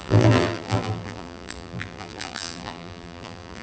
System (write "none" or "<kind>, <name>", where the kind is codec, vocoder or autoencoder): vocoder, BigVGAN v2